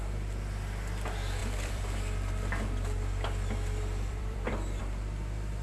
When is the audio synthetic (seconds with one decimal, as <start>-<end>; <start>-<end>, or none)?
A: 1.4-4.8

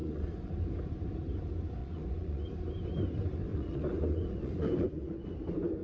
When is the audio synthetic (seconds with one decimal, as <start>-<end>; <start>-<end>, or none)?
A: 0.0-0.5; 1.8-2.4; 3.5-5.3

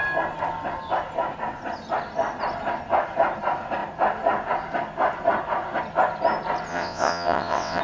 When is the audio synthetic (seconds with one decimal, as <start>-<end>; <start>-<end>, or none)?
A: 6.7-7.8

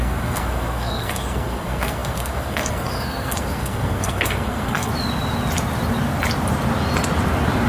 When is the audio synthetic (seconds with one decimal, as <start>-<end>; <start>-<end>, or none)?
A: 0.0-4.9

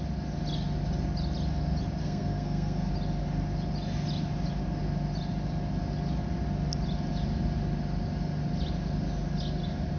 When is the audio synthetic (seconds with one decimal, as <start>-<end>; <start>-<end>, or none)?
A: 2.0-2.9

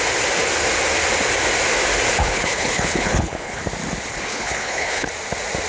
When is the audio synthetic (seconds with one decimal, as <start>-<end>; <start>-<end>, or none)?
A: 2.2-3.6; 4.1-5.1